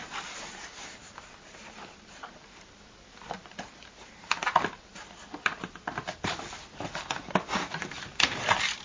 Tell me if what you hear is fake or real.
fake